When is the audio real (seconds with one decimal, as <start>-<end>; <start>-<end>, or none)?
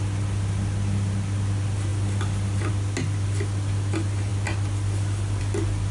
0.0-5.9